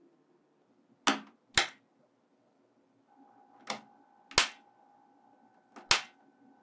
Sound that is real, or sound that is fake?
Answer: real